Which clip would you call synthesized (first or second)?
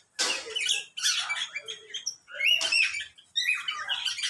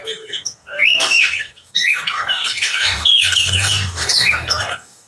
second